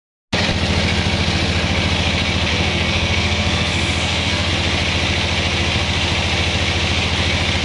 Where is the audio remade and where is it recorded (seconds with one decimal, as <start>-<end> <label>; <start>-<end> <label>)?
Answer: 0.0-2.5 recorded; 2.5-4.5 remade; 4.5-7.6 recorded